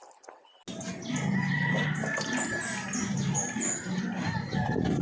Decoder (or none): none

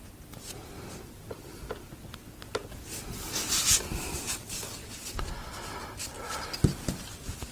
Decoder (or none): none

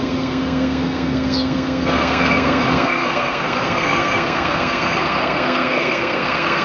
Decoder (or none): codec, SNAC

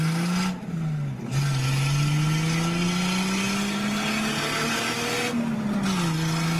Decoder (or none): none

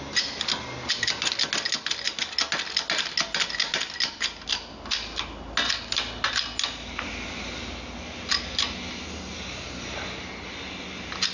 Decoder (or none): none